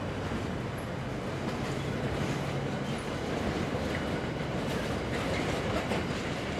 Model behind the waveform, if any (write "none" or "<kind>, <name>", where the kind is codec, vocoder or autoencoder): none